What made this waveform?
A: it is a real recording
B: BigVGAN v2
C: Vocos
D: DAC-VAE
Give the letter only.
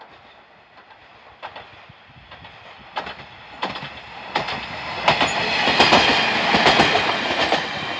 A